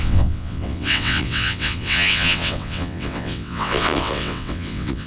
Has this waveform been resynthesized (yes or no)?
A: yes